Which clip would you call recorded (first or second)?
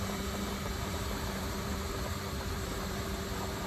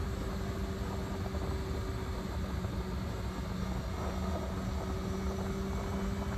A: second